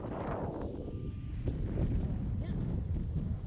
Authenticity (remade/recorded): recorded